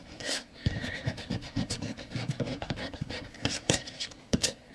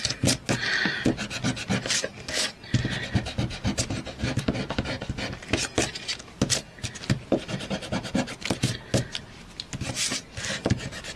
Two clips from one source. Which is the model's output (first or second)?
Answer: first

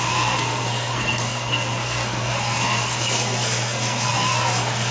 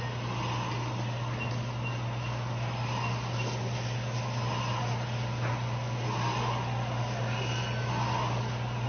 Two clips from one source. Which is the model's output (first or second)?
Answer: first